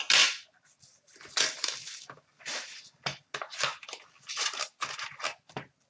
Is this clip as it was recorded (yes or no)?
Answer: yes